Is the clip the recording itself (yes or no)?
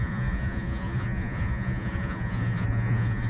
no